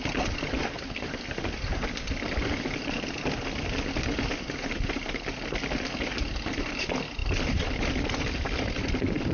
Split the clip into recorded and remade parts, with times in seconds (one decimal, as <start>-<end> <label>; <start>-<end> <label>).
0.0-9.3 recorded